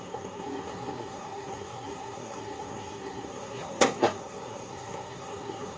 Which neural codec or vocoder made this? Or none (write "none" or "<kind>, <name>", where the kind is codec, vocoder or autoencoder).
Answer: codec, SNAC